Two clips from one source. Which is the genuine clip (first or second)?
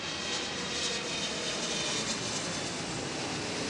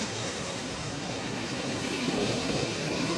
first